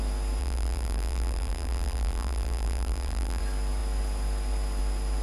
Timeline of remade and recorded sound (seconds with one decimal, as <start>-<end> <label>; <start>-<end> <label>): 0.0-0.4 recorded; 0.4-3.4 remade; 3.4-5.2 recorded